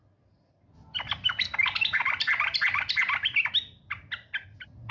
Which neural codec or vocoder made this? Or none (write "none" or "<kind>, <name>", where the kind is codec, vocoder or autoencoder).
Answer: none